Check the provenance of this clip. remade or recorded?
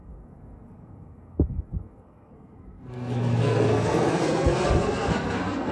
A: remade